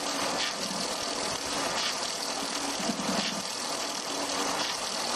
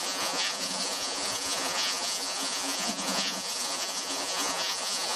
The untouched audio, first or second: first